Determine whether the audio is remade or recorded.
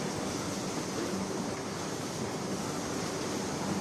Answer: recorded